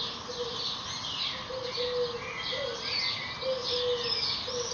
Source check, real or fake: real